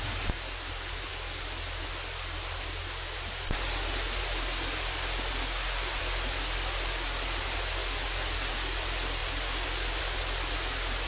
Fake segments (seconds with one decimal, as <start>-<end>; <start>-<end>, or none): none